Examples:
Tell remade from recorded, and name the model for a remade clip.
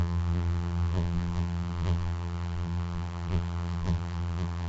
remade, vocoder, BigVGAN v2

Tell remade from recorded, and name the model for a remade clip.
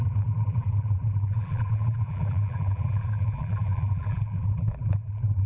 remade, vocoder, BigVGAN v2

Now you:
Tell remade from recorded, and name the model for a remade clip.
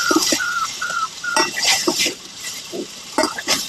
remade, vocoder, BigVGAN v2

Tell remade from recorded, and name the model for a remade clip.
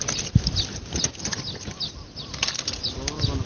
recorded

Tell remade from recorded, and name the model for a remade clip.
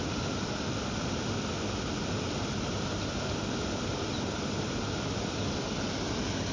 recorded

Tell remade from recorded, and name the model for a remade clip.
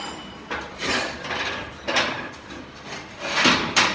remade, vocoder, BigVGAN v2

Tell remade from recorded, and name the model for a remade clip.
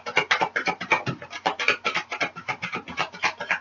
remade, vocoder, BigVGAN v2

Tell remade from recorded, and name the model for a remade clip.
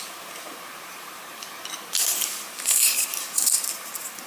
remade, vocoder, BigVGAN v2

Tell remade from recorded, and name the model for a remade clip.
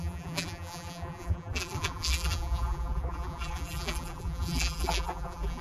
remade, vocoder, BigVGAN v2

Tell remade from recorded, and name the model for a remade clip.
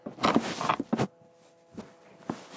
recorded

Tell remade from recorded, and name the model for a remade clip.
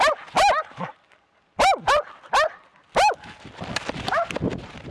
recorded